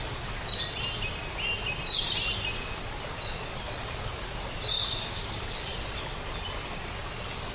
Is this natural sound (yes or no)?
yes